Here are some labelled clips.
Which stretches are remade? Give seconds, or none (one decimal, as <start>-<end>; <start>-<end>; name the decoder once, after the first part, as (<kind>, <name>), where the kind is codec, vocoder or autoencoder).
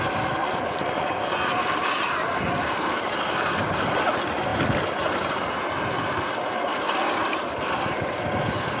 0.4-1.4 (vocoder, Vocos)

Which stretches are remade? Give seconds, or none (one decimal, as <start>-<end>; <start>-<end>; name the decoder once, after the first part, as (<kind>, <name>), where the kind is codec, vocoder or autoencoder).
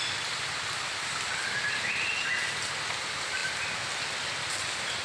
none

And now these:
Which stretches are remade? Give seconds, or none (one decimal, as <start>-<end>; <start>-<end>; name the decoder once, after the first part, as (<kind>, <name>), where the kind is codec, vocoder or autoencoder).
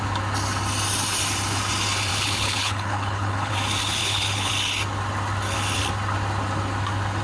2.1-3.5 (codec, HILCodec); 4.0-4.5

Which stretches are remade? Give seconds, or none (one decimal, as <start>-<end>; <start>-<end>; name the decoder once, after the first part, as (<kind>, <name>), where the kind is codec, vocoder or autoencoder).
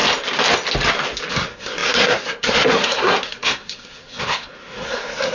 1.3-5.3 (codec, SNAC)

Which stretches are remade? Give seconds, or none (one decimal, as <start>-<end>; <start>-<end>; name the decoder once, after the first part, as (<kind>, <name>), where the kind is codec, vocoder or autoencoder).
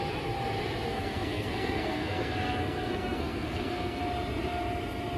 0.9-4.0 (codec, SNAC)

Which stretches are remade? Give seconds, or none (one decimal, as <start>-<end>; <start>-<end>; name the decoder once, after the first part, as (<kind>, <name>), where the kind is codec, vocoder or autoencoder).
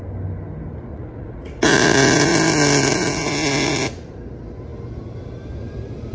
0.9-1.5 (vocoder, Vocos)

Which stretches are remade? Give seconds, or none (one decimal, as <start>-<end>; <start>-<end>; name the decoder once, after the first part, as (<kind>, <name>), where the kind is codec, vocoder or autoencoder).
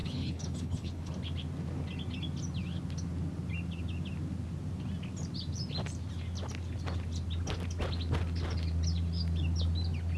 0.0-1.1 (codec, HILCodec)